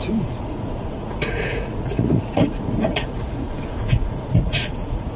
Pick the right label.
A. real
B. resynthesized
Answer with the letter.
B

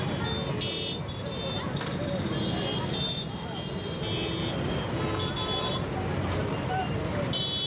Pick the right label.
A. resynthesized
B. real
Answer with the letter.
B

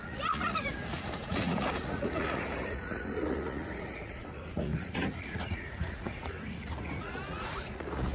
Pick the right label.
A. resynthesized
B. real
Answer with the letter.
A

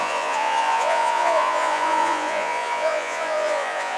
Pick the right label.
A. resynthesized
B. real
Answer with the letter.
A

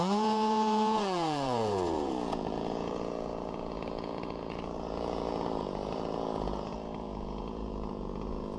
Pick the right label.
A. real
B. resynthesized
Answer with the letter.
B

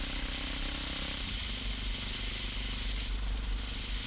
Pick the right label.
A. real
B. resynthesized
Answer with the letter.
A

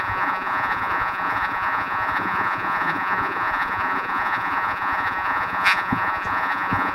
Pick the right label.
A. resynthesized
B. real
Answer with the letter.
A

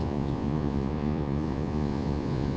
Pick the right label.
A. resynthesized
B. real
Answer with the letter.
A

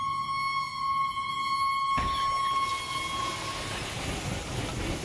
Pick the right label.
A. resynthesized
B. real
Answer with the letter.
B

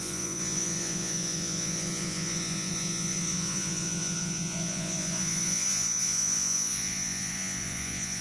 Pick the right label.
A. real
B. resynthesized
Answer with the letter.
B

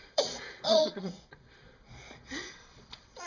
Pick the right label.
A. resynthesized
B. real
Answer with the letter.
A